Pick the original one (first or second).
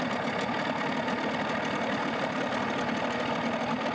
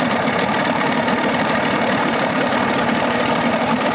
first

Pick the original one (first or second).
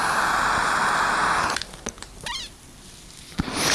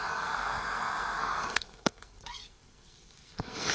first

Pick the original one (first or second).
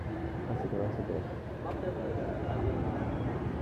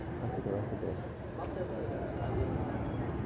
second